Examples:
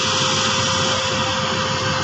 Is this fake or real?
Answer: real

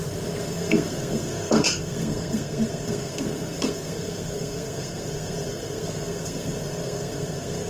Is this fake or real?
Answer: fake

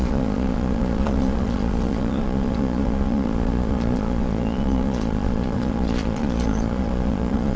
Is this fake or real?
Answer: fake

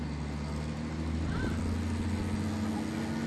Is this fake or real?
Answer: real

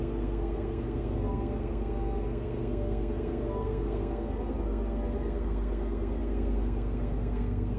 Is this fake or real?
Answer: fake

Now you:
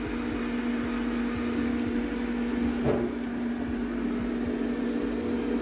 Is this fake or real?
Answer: real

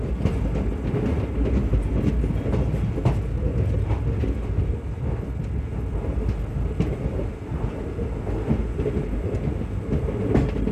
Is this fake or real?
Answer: real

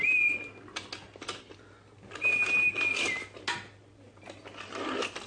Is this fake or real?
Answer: real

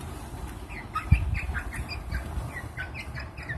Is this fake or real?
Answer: real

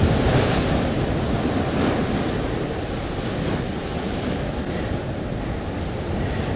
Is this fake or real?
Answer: real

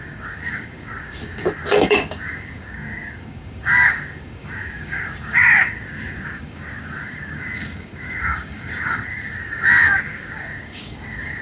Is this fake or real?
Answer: fake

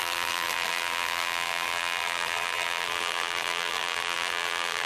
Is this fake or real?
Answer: fake